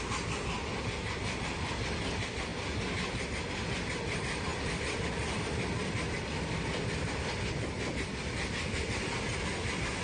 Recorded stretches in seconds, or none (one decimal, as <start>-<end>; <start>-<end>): 0.0-10.0